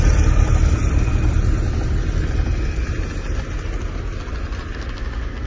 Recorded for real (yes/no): yes